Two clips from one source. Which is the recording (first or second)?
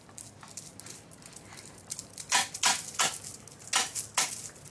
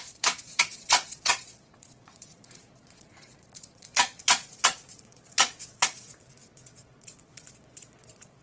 first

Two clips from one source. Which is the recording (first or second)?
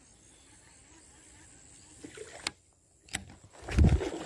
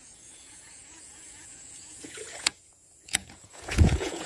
first